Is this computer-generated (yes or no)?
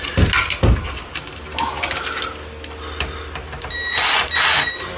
no